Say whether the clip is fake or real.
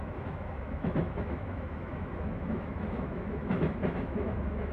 fake